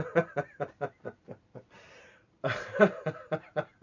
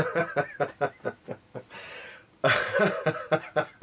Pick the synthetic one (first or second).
first